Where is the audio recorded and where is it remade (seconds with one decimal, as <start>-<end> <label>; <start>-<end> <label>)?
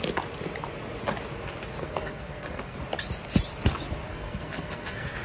0.0-1.8 recorded; 1.8-2.8 remade; 2.8-4.1 recorded; 4.1-5.2 remade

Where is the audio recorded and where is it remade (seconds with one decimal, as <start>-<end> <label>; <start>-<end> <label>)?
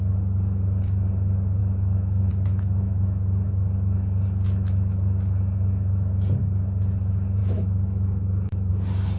0.0-1.6 recorded; 1.6-2.3 remade; 2.3-7.4 recorded; 7.4-8.7 remade; 8.7-9.2 recorded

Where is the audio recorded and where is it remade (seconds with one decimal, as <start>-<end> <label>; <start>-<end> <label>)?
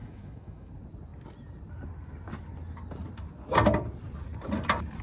0.0-0.7 remade; 0.7-5.0 recorded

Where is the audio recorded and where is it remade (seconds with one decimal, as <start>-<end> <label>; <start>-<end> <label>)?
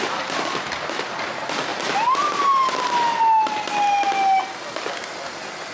0.0-5.7 recorded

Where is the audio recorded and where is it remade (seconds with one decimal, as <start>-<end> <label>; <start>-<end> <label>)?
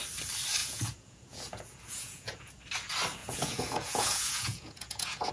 0.0-0.6 recorded; 0.6-2.6 remade; 2.6-3.2 recorded; 3.2-5.3 remade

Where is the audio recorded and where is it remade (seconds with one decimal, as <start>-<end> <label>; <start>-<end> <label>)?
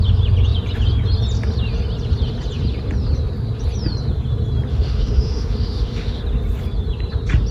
0.0-4.7 recorded; 4.7-6.2 remade; 6.2-7.5 recorded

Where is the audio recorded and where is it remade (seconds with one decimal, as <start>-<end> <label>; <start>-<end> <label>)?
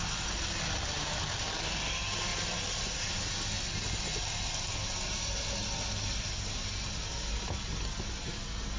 0.0-8.8 recorded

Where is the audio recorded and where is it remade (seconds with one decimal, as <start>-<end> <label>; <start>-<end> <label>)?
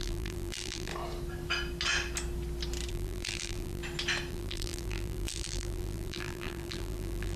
0.0-0.9 remade; 0.9-2.9 recorded; 2.9-3.8 remade; 3.8-4.3 recorded; 4.3-7.4 remade